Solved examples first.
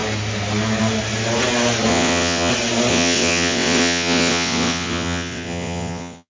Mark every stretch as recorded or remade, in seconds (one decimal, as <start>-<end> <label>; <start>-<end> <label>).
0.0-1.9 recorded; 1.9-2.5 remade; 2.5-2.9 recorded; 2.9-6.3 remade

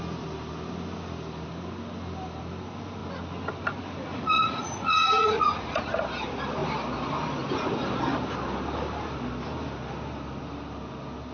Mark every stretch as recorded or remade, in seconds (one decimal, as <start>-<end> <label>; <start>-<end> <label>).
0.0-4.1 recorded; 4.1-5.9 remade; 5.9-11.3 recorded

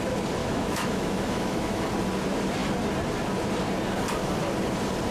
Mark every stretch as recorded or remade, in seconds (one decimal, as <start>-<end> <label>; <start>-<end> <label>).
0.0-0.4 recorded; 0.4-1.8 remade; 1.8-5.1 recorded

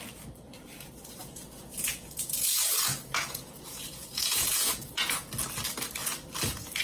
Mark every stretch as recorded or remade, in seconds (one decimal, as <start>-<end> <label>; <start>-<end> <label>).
0.0-1.2 recorded; 1.2-5.3 remade; 5.3-6.8 recorded

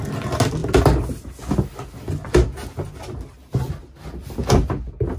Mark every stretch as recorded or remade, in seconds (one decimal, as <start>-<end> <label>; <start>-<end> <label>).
0.0-5.2 recorded

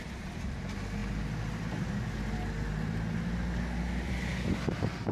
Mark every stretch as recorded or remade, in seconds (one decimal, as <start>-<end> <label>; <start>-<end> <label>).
0.0-5.1 recorded